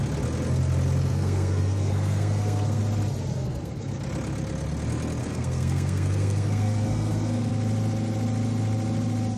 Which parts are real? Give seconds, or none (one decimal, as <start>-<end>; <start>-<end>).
0.0-1.1; 2.8-3.3; 4.0-5.2; 7.5-9.4